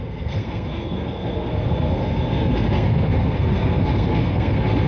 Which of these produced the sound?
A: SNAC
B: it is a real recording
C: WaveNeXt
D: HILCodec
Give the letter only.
A